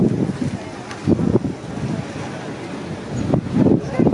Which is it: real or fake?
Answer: real